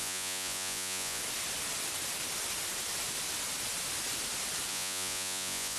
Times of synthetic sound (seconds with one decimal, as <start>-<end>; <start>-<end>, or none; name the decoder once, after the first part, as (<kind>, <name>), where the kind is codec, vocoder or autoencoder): 0.0-1.2 (vocoder, Vocos); 4.7-5.8